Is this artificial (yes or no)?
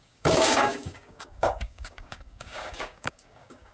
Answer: yes